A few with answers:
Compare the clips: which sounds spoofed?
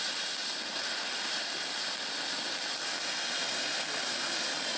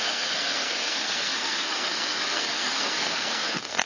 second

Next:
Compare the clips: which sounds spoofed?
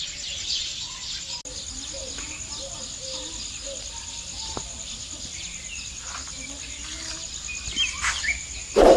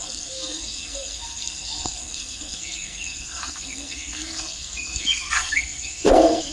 second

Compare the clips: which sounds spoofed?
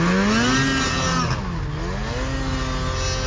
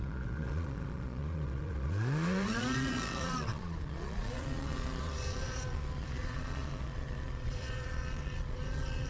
second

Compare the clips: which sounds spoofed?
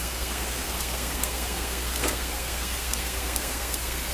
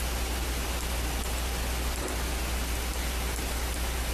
first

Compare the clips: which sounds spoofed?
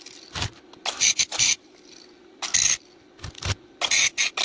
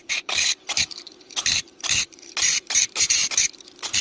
second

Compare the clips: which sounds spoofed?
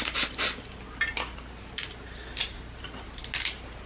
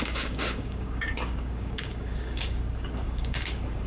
second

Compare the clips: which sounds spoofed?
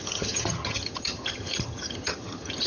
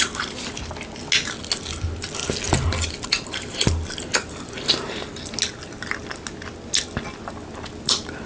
first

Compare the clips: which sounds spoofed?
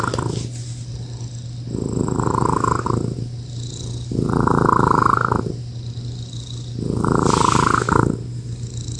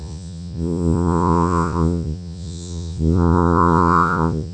second